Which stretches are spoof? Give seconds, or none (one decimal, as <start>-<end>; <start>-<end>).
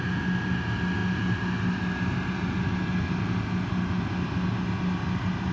none